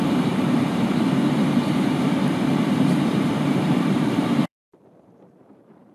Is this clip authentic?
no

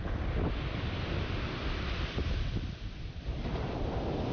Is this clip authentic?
no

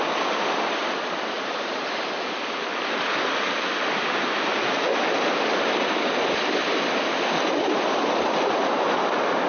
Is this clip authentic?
yes